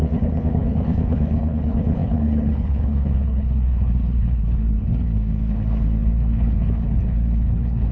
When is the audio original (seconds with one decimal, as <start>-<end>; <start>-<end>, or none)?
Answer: none